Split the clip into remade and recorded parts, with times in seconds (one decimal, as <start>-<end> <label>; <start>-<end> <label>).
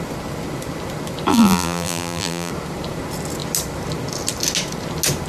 0.0-1.3 recorded; 1.3-2.5 remade; 2.5-5.3 recorded